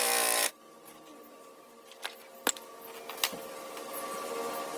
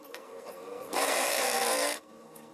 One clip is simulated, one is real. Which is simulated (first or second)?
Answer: second